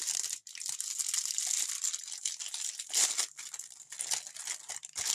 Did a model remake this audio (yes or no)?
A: no